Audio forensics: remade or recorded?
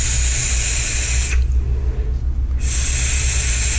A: recorded